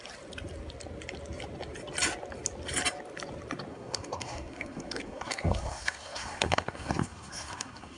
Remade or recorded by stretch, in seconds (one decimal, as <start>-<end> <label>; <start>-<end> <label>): 0.0-3.7 recorded; 3.7-8.0 remade